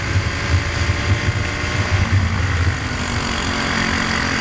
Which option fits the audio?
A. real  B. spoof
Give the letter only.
A